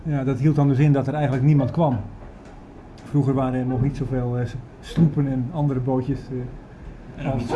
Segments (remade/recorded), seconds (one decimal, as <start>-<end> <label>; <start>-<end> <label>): 0.0-7.6 recorded